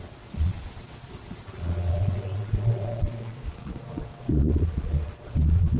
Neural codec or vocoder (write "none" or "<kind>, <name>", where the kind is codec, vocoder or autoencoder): vocoder, Vocos